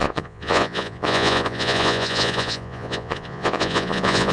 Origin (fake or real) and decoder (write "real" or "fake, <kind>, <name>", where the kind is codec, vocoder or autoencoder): fake, vocoder, Vocos